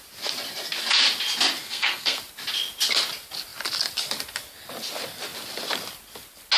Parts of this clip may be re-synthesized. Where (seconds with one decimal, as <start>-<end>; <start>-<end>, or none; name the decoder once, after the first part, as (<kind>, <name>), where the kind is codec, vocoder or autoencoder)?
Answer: 1.6-2.2 (codec, SNAC)